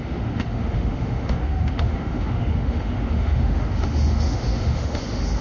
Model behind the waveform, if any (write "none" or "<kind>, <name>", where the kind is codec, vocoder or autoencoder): autoencoder, DAC-VAE